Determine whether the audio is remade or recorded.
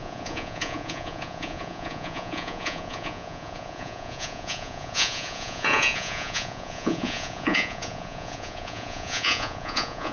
remade